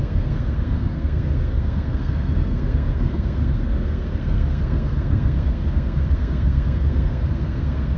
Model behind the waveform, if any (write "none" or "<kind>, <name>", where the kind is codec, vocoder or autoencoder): codec, SNAC